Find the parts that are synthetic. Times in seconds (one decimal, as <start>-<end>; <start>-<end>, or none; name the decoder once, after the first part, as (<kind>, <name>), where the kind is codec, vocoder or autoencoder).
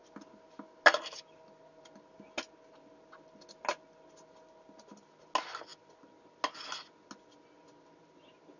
none